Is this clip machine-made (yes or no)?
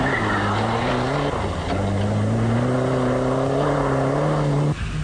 no